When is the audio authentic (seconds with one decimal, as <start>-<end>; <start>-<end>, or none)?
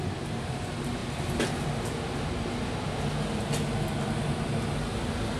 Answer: 0.0-5.4